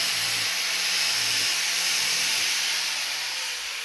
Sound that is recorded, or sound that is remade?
remade